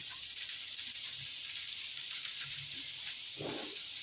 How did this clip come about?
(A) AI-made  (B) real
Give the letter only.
A